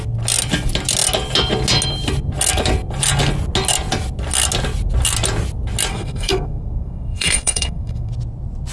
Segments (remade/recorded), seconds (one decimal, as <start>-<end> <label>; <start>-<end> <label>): 0.0-5.9 recorded; 5.9-8.1 remade; 8.1-8.7 recorded